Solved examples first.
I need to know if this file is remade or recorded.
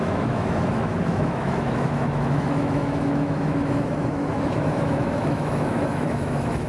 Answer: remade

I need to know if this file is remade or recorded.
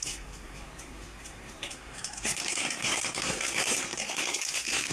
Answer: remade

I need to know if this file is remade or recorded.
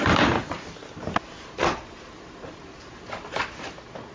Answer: recorded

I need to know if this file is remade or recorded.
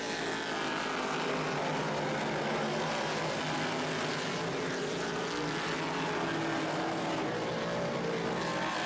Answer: recorded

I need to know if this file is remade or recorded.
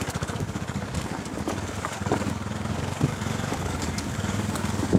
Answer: remade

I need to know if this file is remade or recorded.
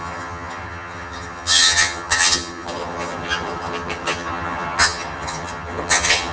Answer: remade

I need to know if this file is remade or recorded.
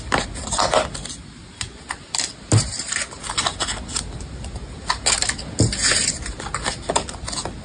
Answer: recorded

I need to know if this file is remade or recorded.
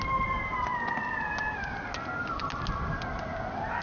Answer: recorded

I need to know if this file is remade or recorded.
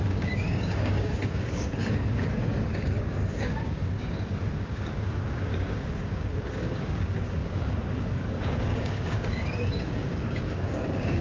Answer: remade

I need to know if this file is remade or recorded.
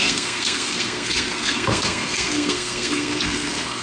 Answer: remade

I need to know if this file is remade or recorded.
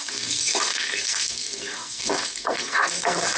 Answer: remade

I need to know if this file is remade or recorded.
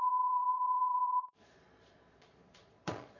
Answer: remade